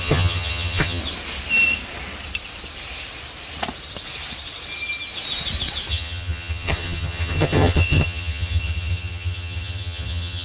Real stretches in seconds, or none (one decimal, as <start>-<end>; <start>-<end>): 1.0-5.9